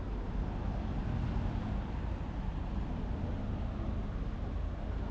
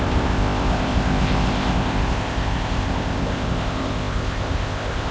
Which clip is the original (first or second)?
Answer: first